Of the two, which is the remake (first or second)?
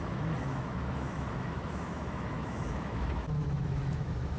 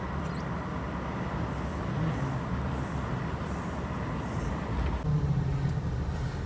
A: first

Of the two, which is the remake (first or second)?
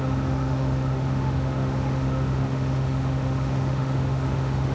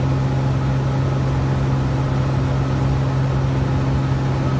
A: first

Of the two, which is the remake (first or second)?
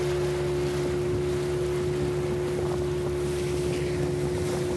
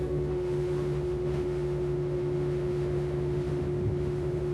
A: second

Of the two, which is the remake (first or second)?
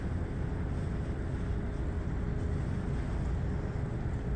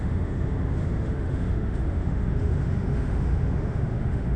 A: second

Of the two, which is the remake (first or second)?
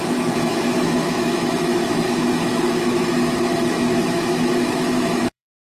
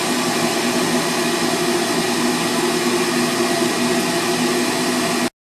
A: first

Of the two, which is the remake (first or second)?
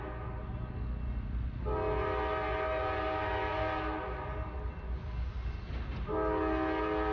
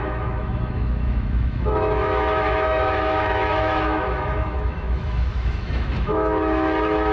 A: second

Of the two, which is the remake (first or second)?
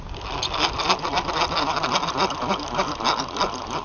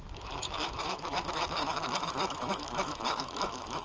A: second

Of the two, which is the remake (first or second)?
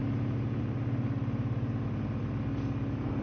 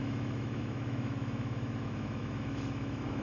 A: second